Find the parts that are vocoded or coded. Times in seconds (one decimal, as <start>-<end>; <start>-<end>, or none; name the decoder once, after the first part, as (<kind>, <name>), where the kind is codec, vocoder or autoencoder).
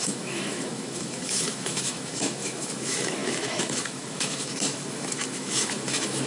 0.0-6.3 (autoencoder, DAC-VAE)